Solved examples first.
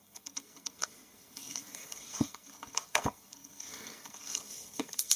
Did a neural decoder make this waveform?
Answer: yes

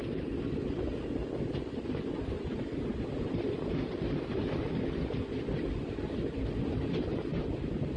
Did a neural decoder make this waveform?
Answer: no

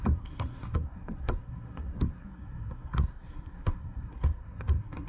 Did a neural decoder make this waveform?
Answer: yes